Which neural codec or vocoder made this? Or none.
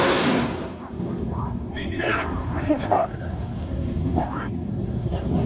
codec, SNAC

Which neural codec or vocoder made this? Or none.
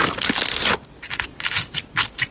none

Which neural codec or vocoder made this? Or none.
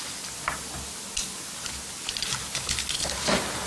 none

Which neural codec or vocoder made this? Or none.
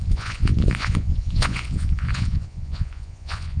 vocoder, Vocos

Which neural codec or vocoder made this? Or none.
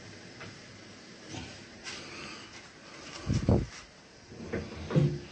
none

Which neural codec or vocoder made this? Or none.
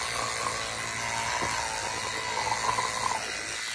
none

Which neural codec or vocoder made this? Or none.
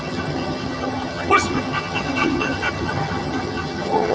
vocoder, HiFi-GAN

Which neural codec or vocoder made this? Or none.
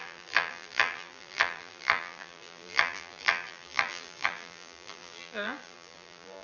vocoder, BigVGAN v2